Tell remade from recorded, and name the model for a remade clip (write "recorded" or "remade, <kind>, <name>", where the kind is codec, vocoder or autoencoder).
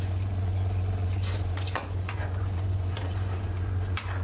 remade, vocoder, Vocos